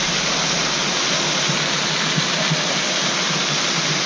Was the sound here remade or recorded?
recorded